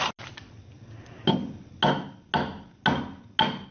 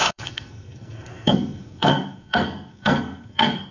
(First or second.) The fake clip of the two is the second